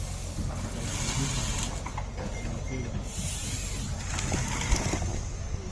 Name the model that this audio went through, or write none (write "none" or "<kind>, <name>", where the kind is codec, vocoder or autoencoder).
none